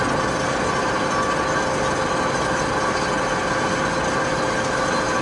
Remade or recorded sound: recorded